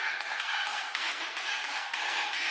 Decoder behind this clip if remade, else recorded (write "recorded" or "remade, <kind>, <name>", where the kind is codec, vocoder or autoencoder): remade, codec, SNAC